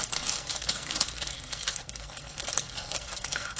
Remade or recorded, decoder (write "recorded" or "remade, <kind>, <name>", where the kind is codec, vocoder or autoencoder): remade, codec, SNAC